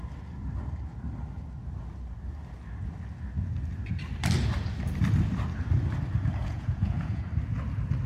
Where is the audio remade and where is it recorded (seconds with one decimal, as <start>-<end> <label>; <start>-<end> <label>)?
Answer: 0.0-6.4 recorded; 6.4-7.3 remade; 7.3-8.1 recorded

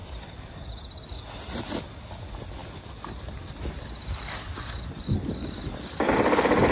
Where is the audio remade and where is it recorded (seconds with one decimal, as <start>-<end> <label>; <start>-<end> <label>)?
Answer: 0.0-6.7 recorded